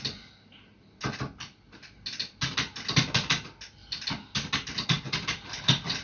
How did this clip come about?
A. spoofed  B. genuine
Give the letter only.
B